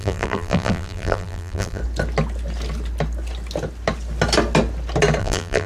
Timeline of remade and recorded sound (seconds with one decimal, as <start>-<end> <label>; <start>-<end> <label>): 0.0-1.8 remade; 1.8-5.2 recorded; 5.2-5.7 remade